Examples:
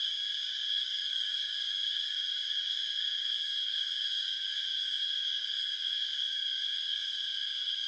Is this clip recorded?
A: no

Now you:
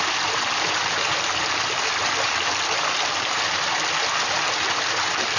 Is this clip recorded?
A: yes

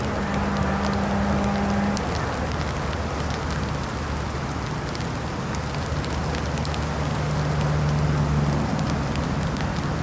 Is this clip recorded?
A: yes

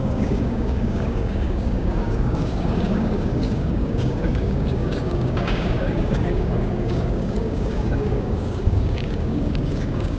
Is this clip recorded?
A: no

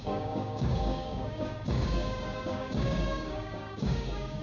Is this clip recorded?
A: no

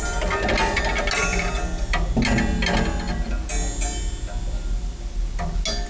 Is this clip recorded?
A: yes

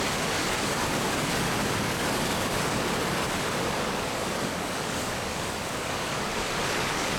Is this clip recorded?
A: no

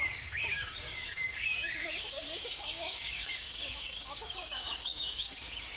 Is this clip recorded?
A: no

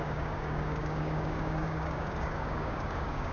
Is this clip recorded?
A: no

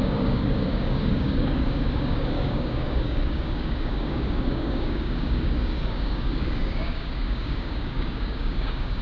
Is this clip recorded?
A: no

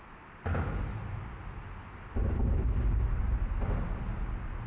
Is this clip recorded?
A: yes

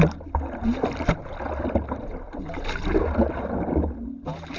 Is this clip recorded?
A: yes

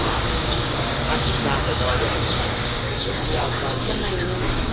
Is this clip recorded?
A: no